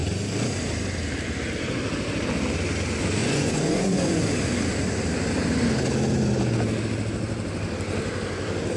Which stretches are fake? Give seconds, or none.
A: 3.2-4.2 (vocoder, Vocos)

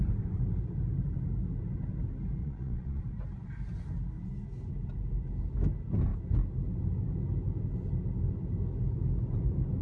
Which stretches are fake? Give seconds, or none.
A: 2.4-3.0 (vocoder, Vocos)

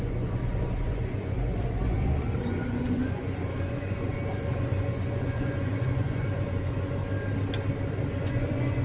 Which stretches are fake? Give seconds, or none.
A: 0.0-7.0 (vocoder, Vocos); 8.1-8.8